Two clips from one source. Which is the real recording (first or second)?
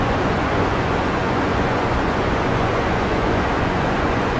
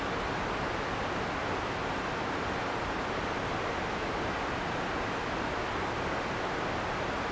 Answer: second